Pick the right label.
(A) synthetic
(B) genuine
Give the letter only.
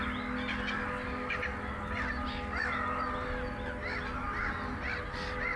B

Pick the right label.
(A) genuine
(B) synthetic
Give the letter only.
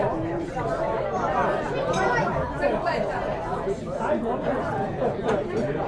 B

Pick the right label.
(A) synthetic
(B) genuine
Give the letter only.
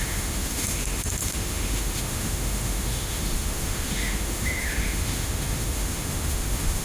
A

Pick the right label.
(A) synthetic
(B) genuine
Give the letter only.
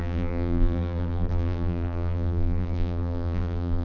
A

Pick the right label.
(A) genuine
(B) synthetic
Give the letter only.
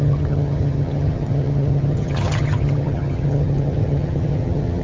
B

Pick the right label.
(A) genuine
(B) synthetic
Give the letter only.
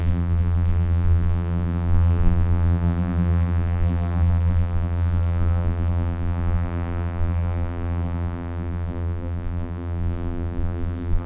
B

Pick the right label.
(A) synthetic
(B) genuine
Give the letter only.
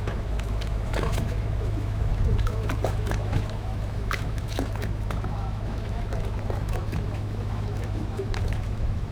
A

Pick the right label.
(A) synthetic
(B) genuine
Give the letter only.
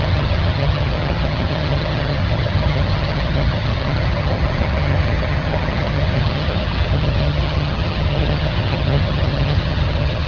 A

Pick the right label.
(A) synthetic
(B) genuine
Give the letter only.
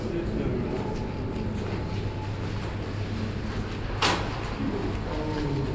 B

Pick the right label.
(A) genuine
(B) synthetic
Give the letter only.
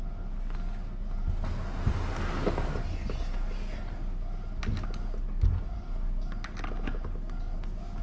A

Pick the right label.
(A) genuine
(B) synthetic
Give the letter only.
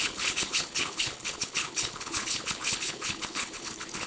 B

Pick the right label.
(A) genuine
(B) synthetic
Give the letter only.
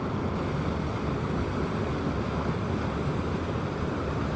A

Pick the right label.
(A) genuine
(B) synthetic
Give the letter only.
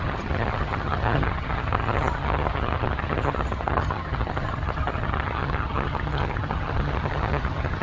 B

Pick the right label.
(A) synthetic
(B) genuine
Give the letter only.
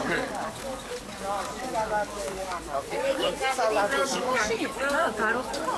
A